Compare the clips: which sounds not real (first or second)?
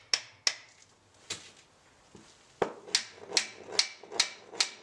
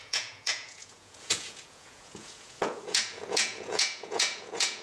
second